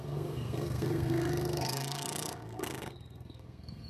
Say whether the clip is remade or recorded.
remade